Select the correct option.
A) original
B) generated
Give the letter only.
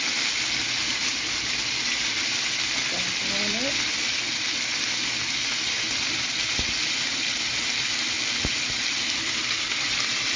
A